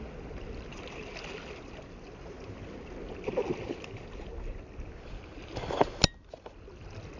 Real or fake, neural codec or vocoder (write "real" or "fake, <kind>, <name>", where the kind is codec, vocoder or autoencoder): real